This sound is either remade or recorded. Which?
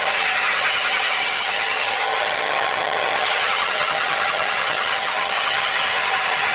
remade